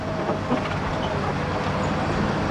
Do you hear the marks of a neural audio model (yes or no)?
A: no